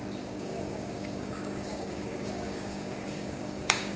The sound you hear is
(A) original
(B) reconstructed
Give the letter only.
B